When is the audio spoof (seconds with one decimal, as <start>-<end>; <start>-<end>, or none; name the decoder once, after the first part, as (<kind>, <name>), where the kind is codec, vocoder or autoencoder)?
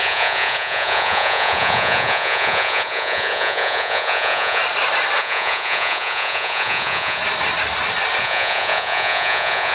0.0-4.6 (vocoder, Vocos); 5.2-7.2; 8.2-9.7